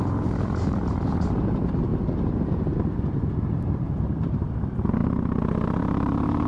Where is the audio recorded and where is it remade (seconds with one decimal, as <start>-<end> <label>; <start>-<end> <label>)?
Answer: 0.0-1.9 remade; 1.9-3.7 recorded; 3.7-5.0 remade; 5.0-5.8 recorded; 5.8-6.5 remade